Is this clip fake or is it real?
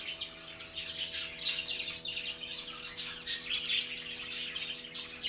real